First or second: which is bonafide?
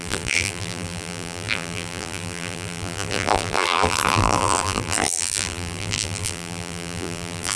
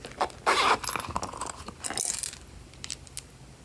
second